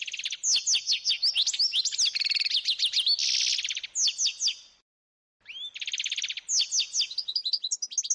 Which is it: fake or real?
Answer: real